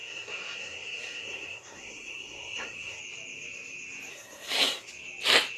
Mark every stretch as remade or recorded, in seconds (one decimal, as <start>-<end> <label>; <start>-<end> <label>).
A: 0.0-3.0 remade; 3.0-4.1 recorded; 4.1-4.9 remade; 4.9-5.6 recorded